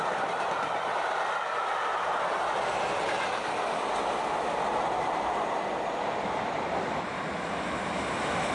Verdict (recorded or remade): recorded